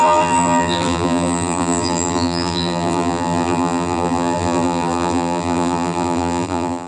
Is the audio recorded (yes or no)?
no